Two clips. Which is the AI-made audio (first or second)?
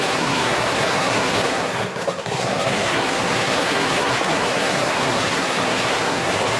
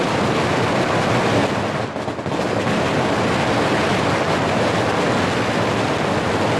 first